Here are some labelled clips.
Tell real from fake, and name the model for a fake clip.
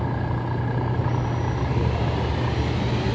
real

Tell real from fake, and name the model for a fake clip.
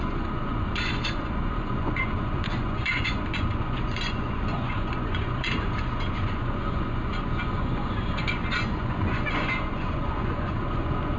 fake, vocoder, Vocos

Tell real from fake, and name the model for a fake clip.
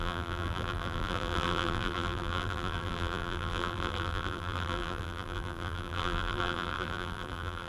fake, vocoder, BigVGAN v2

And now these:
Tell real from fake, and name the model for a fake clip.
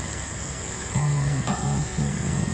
fake, codec, SNAC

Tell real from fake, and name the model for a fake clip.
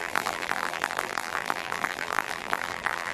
fake, vocoder, BigVGAN v2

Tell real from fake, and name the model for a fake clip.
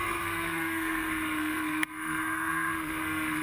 fake, codec, SNAC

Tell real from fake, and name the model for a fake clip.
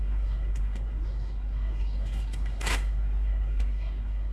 fake, codec, SNAC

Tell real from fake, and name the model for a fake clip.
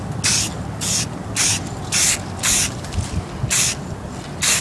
real